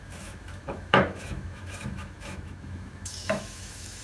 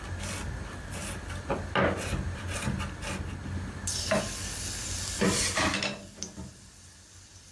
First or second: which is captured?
second